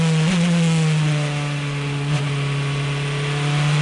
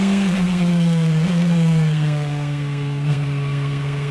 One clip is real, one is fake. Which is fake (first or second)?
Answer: second